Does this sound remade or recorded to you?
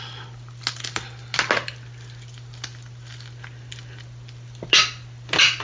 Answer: recorded